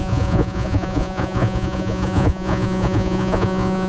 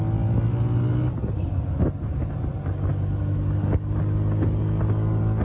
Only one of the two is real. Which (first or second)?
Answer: second